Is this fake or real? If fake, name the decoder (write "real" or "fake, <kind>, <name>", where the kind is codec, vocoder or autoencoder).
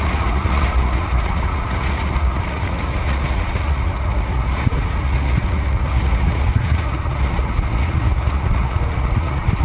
fake, vocoder, Vocos